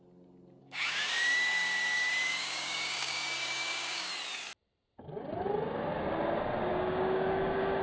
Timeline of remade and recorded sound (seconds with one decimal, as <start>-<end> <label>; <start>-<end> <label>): 0.0-0.6 recorded; 0.6-4.1 remade; 4.1-6.7 recorded; 6.7-7.8 remade